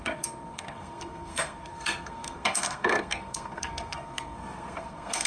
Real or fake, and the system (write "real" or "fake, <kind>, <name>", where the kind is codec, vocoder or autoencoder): fake, codec, SNAC